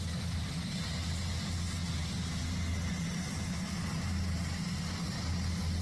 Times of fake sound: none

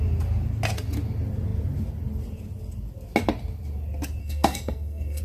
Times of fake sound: 4.2-5.2 (codec, SNAC)

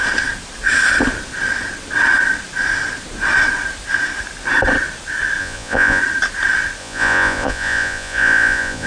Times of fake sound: 5.4-6.0 (vocoder, Vocos); 6.8-8.9